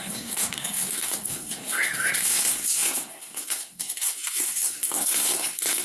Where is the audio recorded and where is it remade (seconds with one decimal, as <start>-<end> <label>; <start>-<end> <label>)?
0.0-5.8 remade